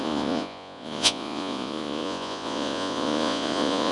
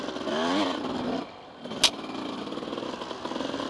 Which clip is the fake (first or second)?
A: first